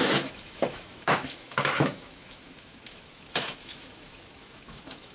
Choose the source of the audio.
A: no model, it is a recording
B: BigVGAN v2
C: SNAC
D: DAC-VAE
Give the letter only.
D